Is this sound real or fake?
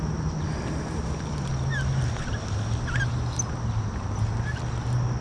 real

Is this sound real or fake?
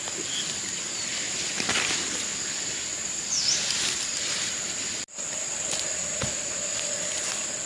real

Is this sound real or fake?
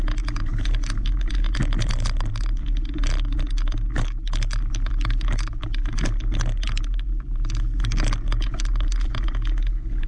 real